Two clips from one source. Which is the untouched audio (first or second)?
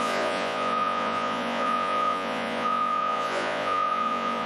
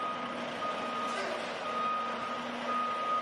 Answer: second